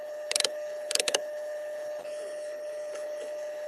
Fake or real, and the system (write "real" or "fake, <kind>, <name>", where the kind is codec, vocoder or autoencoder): fake, codec, HILCodec